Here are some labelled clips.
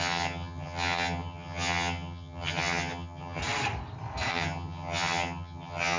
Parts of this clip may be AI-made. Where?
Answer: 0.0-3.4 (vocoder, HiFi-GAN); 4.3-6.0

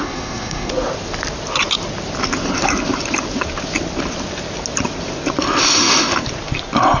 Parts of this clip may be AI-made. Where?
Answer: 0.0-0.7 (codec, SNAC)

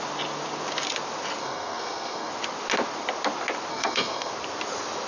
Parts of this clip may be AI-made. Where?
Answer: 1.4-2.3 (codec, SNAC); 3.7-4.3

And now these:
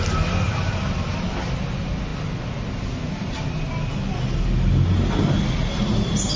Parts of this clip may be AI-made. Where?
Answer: none

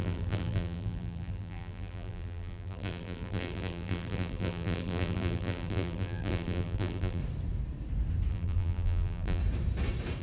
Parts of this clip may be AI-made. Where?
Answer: 0.0-7.2 (vocoder, BigVGAN v2); 8.3-9.4

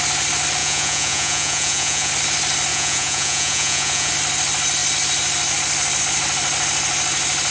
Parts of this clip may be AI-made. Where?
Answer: 0.6-2.1 (vocoder, Vocos); 2.7-4.1